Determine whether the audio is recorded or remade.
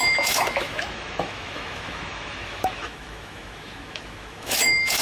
remade